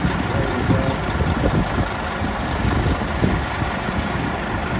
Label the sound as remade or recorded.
recorded